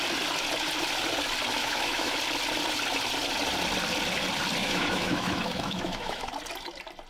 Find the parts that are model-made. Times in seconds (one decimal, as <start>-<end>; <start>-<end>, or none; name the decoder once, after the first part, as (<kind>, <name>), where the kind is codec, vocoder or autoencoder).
1.6-2.2 (autoencoder, DAC-VAE); 4.6-6.3